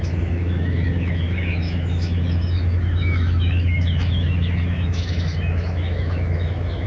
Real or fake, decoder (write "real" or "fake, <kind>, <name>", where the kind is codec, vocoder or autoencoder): fake, autoencoder, DAC-VAE